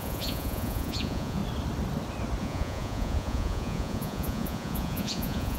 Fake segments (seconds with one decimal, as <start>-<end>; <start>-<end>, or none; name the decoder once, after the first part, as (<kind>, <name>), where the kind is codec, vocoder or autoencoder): 0.0-1.4 (vocoder, Vocos); 2.4-5.6